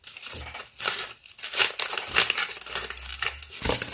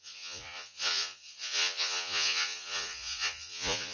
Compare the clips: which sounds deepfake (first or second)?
second